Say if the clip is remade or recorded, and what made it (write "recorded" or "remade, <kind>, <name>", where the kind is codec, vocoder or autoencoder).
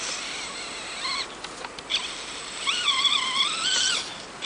recorded